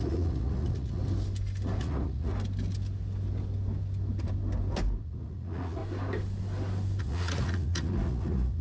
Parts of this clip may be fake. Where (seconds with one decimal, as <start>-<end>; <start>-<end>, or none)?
0.0-1.0; 1.8-2.3; 5.0-5.8; 7.0-8.6